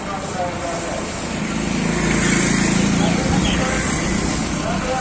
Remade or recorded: recorded